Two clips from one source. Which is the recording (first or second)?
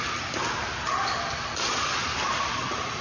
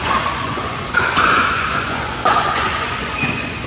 first